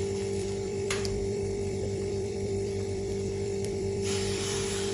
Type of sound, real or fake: fake